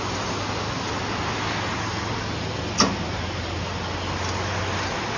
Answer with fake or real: real